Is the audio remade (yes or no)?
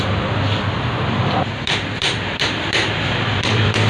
yes